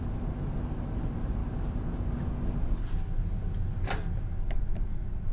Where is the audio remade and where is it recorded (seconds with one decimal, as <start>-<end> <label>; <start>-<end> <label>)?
0.0-5.3 recorded